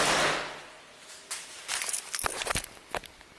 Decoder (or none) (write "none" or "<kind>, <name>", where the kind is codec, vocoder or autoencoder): none